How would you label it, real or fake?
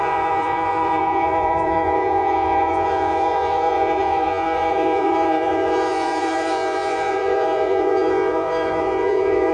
fake